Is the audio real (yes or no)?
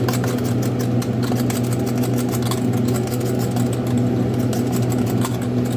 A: yes